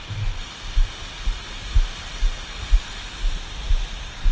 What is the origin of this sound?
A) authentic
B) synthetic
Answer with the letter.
A